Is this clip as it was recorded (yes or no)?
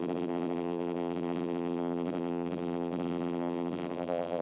no